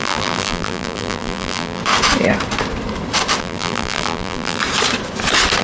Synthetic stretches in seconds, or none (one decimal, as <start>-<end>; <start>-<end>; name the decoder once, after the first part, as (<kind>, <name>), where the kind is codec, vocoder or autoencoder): 0.0-1.8 (vocoder, BigVGAN v2); 3.4-4.6